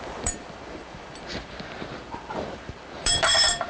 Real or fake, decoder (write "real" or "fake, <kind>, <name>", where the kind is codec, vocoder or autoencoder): fake, vocoder, BigVGAN v2